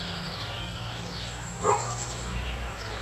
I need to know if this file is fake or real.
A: fake